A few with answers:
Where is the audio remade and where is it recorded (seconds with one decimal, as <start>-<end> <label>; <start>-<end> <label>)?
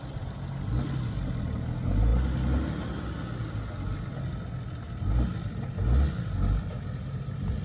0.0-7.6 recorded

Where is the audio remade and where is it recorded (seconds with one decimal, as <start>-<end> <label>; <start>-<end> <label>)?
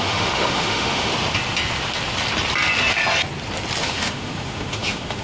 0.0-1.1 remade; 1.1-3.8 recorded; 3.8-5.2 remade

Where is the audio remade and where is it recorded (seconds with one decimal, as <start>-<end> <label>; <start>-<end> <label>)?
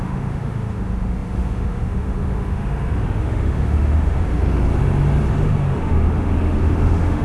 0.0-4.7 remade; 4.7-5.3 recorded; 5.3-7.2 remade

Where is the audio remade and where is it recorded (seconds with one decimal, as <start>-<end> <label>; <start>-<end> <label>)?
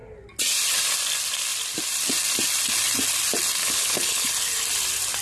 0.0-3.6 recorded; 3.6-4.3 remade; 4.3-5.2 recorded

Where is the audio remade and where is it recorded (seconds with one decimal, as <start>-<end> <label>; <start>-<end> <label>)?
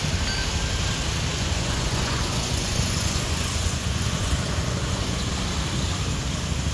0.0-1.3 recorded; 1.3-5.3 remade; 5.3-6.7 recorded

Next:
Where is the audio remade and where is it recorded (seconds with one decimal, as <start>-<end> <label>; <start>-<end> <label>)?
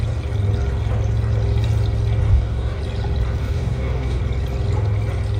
0.0-2.3 recorded; 2.3-2.8 remade; 2.8-3.4 recorded; 3.4-4.2 remade; 4.2-5.4 recorded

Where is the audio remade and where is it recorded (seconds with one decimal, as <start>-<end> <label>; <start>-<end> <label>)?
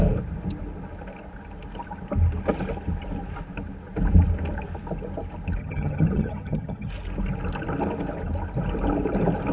0.0-5.6 recorded; 5.6-6.9 remade; 6.9-9.5 recorded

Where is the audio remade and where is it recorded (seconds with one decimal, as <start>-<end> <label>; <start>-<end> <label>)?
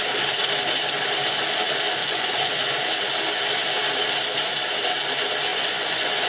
0.0-2.0 recorded; 2.0-2.5 remade; 2.5-5.5 recorded; 5.5-6.3 remade